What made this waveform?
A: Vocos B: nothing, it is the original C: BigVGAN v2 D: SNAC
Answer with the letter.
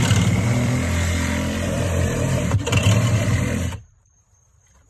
C